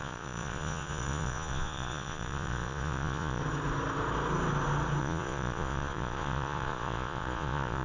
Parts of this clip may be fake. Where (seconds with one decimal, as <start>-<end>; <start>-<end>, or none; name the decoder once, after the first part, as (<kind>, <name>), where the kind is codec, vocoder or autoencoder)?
0.0-3.4 (vocoder, Vocos); 5.0-7.8